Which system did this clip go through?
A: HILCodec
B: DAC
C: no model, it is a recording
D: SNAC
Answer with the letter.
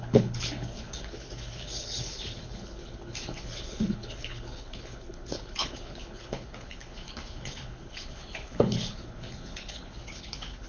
A